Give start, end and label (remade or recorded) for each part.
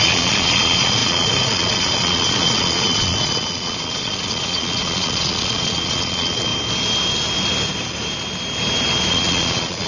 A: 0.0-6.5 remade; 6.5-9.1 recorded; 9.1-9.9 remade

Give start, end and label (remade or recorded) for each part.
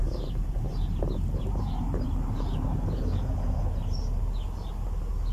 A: 0.0-0.7 remade; 0.7-1.4 recorded; 1.4-3.3 remade; 3.3-5.3 recorded